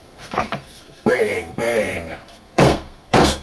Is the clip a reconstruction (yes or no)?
yes